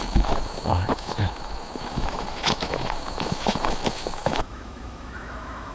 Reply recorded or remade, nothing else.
remade